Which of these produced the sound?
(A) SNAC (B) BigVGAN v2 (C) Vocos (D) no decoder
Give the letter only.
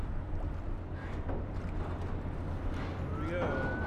D